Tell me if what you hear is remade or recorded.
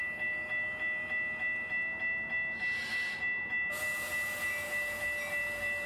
recorded